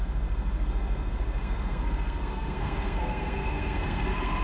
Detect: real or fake fake